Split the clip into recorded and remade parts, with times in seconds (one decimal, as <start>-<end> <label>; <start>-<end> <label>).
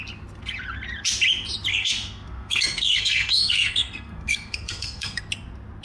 0.0-1.7 recorded; 1.7-5.2 remade; 5.2-5.8 recorded